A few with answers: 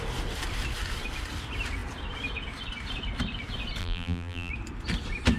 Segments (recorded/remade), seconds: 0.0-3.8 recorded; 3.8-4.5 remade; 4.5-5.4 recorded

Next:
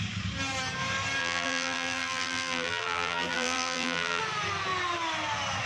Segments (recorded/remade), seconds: 0.0-1.2 recorded; 1.2-4.2 remade; 4.2-5.7 recorded

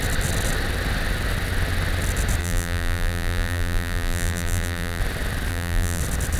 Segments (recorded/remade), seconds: 0.0-2.4 recorded; 2.4-5.0 remade; 5.0-5.5 recorded; 5.5-6.0 remade; 6.0-6.4 recorded